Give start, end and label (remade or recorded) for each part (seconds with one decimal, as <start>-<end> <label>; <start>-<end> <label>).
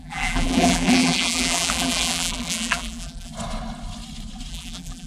0.0-3.3 remade; 3.3-4.5 recorded; 4.5-5.1 remade